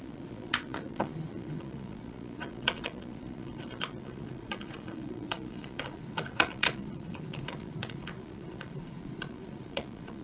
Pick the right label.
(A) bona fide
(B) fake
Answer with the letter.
B